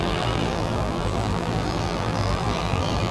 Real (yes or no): no